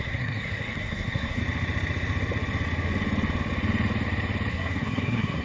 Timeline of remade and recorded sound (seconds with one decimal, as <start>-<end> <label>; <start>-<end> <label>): 0.0-1.4 remade; 1.4-4.5 recorded; 4.5-5.4 remade